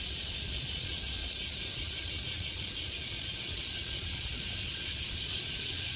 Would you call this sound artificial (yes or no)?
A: yes